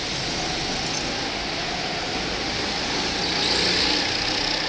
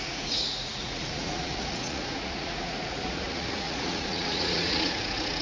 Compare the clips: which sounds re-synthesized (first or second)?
second